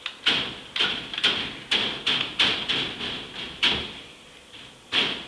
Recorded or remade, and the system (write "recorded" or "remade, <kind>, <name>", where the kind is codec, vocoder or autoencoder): recorded